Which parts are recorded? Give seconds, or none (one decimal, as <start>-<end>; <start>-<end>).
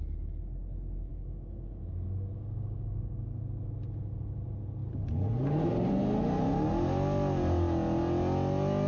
0.0-1.1; 3.4-8.9